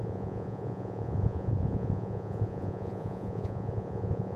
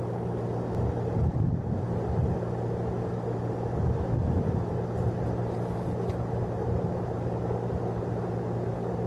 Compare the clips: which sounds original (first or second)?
second